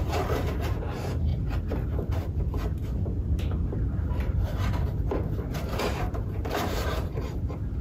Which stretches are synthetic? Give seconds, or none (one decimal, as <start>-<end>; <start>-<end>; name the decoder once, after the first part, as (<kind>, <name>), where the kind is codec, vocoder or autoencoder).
0.0-1.3 (vocoder, BigVGAN v2); 6.0-7.8